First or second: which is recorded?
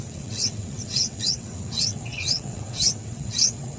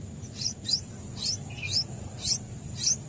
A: second